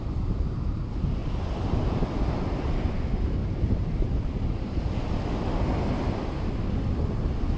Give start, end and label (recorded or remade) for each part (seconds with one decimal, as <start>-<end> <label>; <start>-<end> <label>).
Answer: 0.0-3.4 recorded; 3.4-5.1 remade; 5.1-7.6 recorded